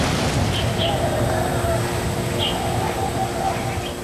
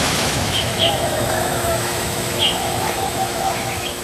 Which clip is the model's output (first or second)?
second